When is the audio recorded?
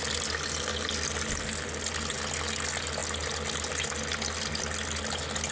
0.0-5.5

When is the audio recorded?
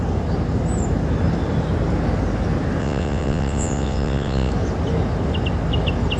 0.0-2.8; 4.5-6.2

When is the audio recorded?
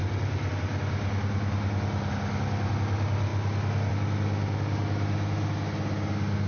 0.0-6.5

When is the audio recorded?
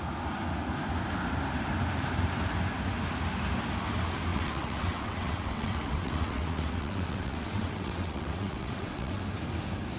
0.0-4.3; 9.2-10.0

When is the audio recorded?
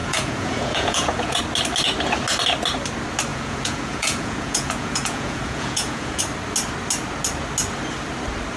1.4-3.3; 6.2-8.6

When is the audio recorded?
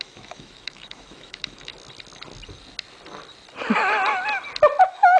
1.7-4.8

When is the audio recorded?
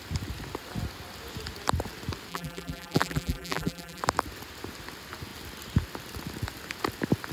0.0-2.3; 4.0-7.3